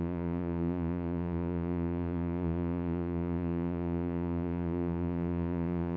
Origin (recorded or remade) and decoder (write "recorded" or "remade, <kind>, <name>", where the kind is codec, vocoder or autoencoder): remade, vocoder, Vocos